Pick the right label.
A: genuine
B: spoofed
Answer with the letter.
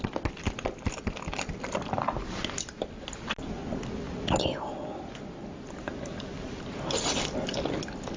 A